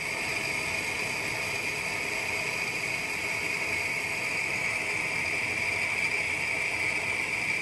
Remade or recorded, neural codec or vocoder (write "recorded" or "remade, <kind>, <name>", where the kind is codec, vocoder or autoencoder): recorded